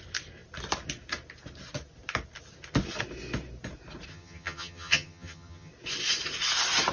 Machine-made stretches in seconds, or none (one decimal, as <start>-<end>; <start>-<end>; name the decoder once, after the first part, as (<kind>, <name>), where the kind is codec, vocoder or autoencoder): 4.1-5.7 (vocoder, HiFi-GAN)